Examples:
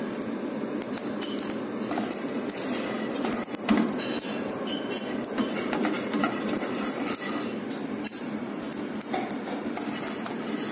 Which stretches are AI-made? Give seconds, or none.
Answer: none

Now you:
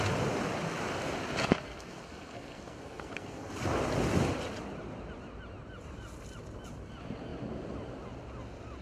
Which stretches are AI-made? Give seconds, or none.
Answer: 1.5-3.5 (codec, SNAC)